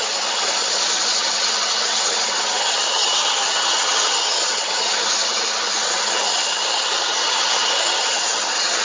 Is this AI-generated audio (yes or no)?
yes